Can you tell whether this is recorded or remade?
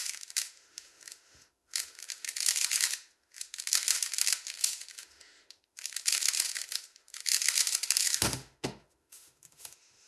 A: remade